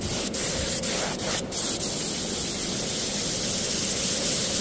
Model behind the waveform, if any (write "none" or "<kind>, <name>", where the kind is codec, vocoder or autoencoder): none